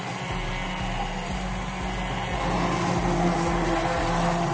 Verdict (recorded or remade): recorded